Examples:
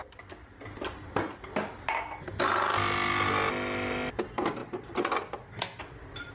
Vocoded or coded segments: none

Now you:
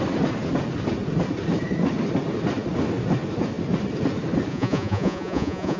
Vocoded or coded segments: 4.5-5.8 (vocoder, Vocos)

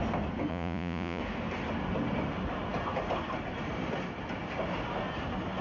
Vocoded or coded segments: 0.5-1.2 (vocoder, Vocos)